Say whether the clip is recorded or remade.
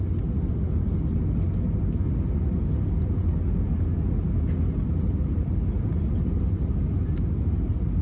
recorded